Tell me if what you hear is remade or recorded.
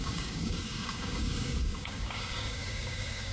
remade